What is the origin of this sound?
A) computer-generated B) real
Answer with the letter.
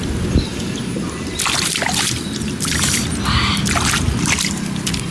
B